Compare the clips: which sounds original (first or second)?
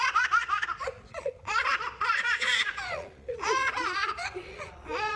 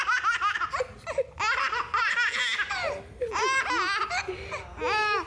second